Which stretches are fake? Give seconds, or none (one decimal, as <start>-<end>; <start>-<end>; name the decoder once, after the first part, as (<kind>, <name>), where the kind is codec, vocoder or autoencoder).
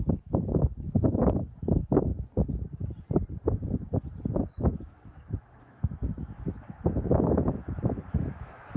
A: 0.0-2.1 (autoencoder, DAC-VAE); 4.5-8.8